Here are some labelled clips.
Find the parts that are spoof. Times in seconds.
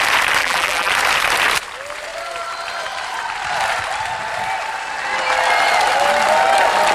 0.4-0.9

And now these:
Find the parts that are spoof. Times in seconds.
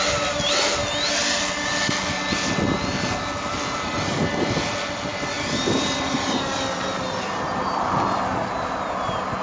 5.1-8.2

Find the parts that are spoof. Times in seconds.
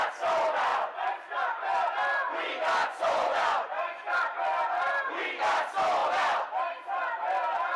0.7-1.9; 2.8-4.0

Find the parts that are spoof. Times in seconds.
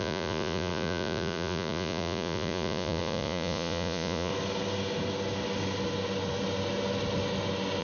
0.0-4.3